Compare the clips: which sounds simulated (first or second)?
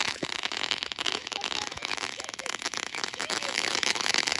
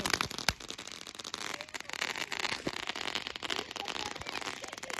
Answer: first